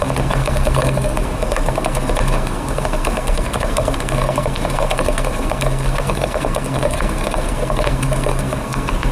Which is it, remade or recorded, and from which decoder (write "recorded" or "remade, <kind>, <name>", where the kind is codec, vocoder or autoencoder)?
remade, codec, SNAC